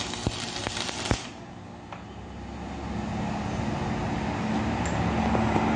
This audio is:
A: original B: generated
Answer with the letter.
A